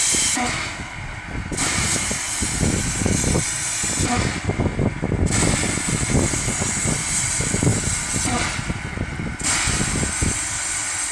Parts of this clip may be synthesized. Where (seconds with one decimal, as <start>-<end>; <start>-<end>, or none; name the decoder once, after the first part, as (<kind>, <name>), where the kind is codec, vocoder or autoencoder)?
none